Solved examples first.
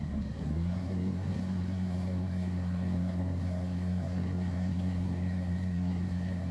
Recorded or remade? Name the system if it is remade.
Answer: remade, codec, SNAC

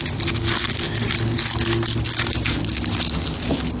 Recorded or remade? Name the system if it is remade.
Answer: recorded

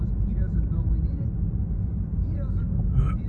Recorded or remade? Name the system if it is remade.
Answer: recorded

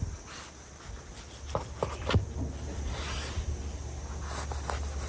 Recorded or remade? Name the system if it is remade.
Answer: recorded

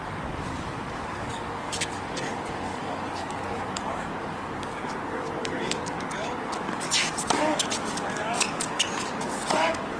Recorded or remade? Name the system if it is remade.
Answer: remade, codec, DAC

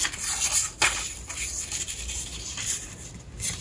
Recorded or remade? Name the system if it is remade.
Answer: recorded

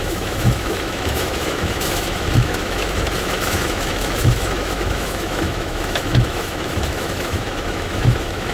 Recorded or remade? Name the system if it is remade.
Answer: remade, autoencoder, DAC-VAE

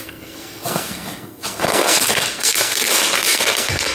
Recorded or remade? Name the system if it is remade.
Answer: remade, codec, SNAC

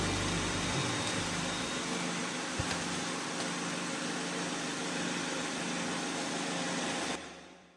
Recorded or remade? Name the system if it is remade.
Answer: remade, vocoder, BigVGAN v2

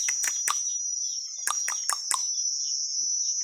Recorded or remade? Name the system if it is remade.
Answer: recorded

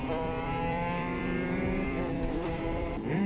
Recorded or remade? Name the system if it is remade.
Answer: remade, vocoder, BigVGAN v2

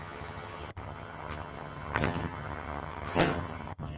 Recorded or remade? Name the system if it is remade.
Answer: remade, vocoder, HiFi-GAN